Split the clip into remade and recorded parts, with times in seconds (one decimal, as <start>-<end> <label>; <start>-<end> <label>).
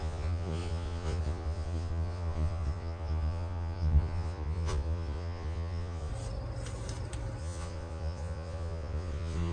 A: 0.0-6.1 remade; 6.1-7.4 recorded; 7.4-9.5 remade